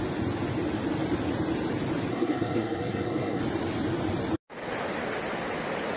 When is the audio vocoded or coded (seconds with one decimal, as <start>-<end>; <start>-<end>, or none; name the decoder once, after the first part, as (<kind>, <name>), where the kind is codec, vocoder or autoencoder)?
2.1-3.4 (codec, SNAC)